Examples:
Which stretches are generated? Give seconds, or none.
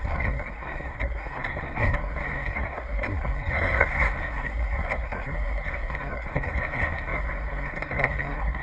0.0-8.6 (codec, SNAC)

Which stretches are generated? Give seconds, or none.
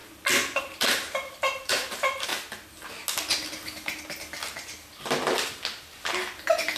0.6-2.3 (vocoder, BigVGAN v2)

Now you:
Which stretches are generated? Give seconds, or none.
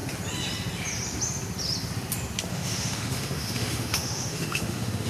2.5-5.1 (autoencoder, DAC-VAE)